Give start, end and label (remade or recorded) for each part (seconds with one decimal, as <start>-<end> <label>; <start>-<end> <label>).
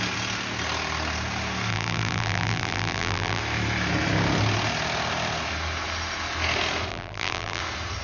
0.0-1.7 recorded; 1.7-3.4 remade; 3.4-6.9 recorded; 6.9-7.6 remade; 7.6-8.0 recorded